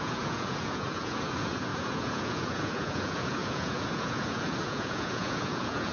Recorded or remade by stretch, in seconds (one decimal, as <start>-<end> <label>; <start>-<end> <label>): 0.0-5.9 remade